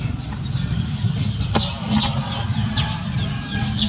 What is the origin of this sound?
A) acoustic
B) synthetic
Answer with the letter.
A